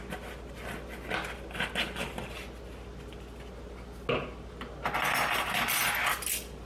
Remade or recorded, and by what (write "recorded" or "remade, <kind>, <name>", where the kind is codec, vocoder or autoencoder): recorded